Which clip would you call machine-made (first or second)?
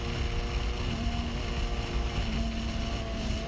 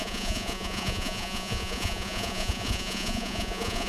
second